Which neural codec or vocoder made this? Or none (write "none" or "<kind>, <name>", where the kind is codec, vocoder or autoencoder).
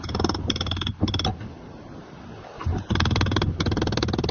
none